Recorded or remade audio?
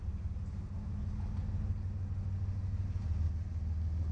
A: recorded